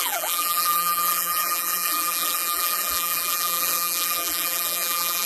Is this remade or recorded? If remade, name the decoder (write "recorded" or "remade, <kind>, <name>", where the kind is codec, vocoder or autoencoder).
remade, vocoder, BigVGAN v2